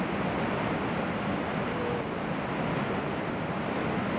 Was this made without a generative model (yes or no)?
yes